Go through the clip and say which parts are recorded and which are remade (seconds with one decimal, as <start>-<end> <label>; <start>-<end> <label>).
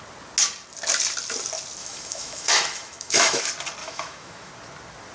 0.0-1.8 recorded; 1.8-3.4 remade; 3.4-3.8 recorded; 3.8-4.5 remade; 4.5-5.1 recorded